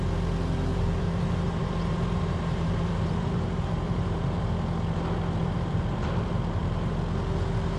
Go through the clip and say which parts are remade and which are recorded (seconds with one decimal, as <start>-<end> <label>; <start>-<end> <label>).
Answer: 0.0-0.7 recorded; 0.7-4.5 remade; 4.5-5.4 recorded; 5.4-6.9 remade; 6.9-7.8 recorded